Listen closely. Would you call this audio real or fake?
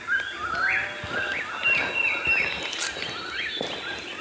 real